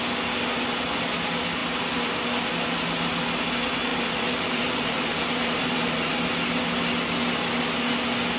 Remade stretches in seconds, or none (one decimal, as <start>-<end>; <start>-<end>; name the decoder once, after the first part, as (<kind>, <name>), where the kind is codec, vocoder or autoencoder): 3.9-6.1 (vocoder, BigVGAN v2)